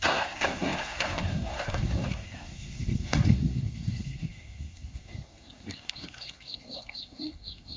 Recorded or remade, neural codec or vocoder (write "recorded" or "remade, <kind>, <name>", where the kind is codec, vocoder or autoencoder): remade, codec, SNAC